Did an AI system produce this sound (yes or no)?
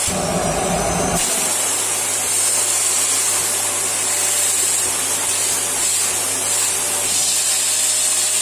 no